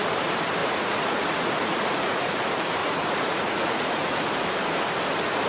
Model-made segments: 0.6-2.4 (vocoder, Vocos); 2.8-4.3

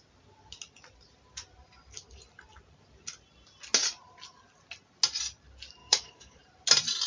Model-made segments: 5.8-6.4 (codec, DAC)

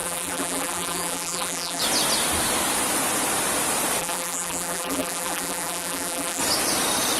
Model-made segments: 0.0-1.8 (vocoder, BigVGAN v2); 4.0-6.4

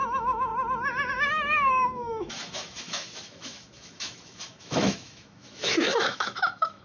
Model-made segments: 0.0-0.5 (autoencoder, DAC-VAE); 1.1-6.8

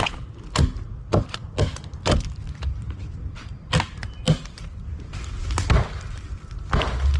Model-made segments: none

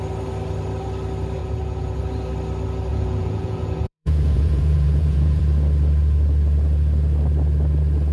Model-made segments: 1.4-2.0 (vocoder, Vocos); 2.9-5.4

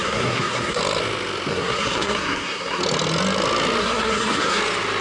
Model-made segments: 0.0-0.8 (codec, SNAC); 1.5-2.8; 3.8-4.6

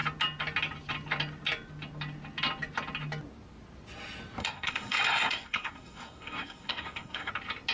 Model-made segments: 4.4-7.3 (codec, SNAC)